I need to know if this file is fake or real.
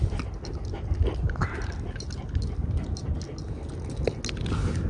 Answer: real